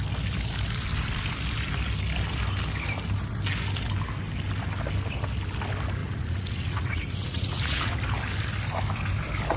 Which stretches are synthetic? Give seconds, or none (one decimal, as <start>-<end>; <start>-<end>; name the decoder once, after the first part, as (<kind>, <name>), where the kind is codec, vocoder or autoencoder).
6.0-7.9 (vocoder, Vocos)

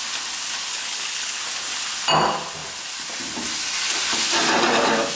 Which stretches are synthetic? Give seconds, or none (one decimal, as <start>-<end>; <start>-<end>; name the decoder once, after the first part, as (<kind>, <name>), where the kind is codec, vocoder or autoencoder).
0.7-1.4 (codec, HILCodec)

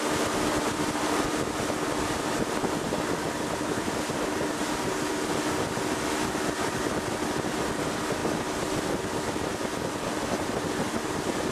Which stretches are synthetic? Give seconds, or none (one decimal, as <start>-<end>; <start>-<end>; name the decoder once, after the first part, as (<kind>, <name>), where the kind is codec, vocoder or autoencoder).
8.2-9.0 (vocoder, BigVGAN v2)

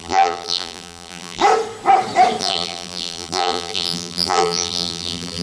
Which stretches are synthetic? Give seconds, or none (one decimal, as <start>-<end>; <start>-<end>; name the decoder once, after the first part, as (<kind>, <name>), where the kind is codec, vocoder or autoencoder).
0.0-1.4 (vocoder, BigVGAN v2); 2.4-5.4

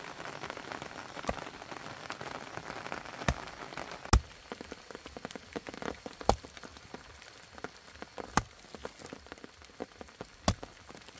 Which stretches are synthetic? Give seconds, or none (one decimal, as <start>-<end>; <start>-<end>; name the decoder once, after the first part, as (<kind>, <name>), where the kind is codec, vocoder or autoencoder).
none